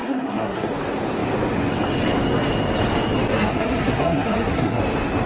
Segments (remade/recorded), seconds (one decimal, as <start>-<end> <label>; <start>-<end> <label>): 0.0-0.7 remade; 0.7-3.4 recorded; 3.4-4.8 remade; 4.8-5.3 recorded